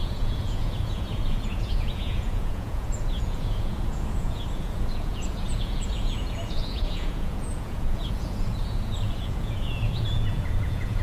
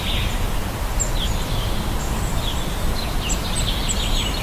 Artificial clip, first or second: first